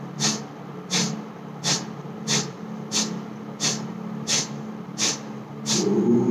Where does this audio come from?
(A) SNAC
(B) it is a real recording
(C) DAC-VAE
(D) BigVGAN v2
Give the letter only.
B